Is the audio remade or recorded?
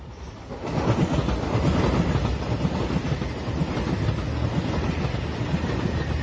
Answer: recorded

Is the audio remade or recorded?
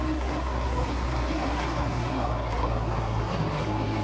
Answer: remade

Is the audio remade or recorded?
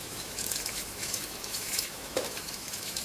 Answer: remade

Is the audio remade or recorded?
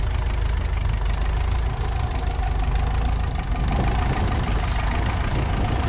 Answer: recorded